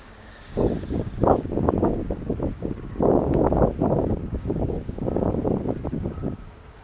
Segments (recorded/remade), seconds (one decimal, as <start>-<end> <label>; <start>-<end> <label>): 0.0-6.8 remade